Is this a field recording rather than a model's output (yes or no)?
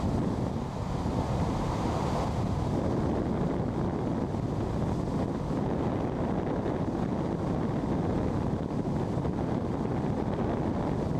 yes